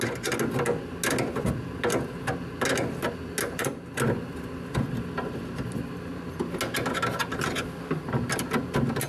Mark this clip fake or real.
real